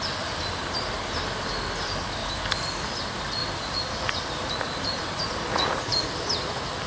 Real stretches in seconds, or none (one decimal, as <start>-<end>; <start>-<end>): 0.0-5.5; 6.0-6.9